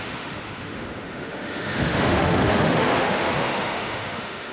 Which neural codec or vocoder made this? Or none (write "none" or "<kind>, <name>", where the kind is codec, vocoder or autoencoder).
autoencoder, DAC-VAE